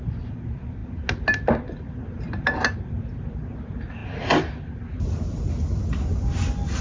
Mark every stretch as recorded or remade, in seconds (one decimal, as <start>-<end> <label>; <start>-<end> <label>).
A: 0.0-6.8 recorded